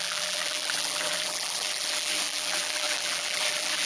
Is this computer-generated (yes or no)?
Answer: yes